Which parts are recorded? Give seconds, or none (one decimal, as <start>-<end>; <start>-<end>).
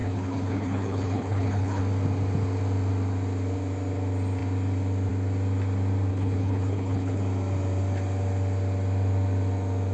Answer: 1.8-6.1; 7.2-9.9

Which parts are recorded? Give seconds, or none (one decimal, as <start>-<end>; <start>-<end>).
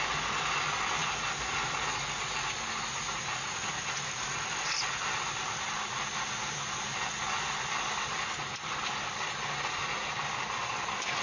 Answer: 0.0-11.2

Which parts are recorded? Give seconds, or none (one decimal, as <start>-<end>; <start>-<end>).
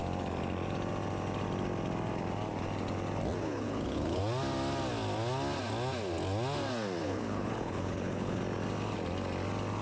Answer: 0.0-3.4; 4.2-7.0; 8.4-9.8